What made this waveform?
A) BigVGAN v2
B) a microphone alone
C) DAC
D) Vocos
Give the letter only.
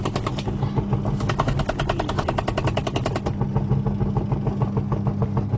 B